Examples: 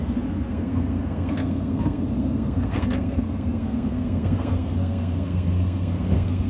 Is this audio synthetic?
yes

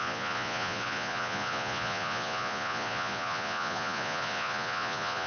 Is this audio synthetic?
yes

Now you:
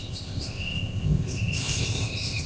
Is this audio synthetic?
yes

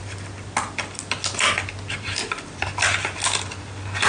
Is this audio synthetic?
no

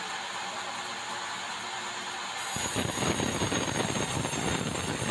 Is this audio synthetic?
no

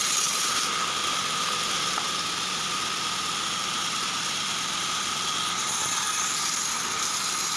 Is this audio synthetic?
no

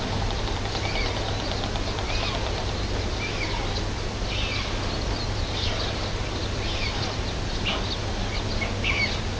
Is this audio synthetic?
no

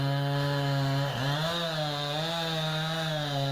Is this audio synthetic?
no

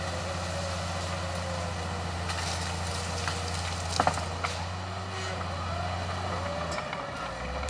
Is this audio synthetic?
no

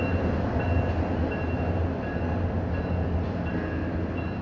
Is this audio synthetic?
no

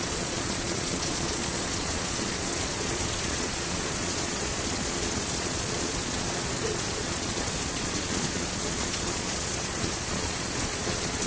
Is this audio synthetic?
yes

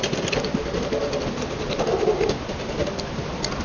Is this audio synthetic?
no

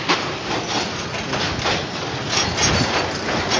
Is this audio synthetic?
no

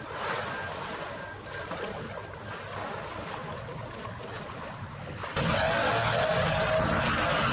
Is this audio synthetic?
no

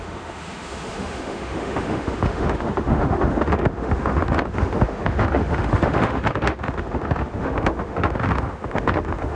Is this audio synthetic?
yes